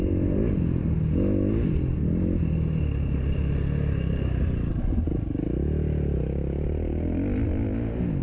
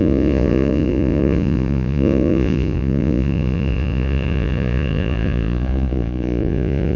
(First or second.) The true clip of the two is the first